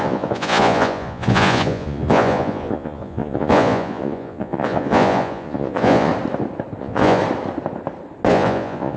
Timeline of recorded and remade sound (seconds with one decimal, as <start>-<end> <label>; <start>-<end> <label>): 0.0-6.1 remade; 6.1-6.8 recorded; 6.8-7.2 remade; 7.2-8.3 recorded; 8.3-9.0 remade